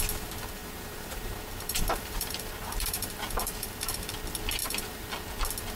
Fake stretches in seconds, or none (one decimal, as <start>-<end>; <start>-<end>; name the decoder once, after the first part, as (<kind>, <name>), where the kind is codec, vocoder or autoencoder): 0.6-4.1 (vocoder, BigVGAN v2); 4.6-5.1